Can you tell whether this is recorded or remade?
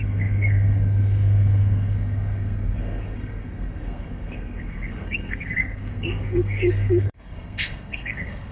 remade